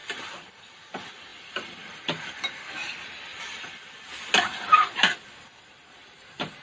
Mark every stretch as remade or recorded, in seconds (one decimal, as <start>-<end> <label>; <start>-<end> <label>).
0.0-1.3 recorded; 1.3-2.6 remade; 2.6-3.3 recorded; 3.3-4.1 remade; 4.1-6.6 recorded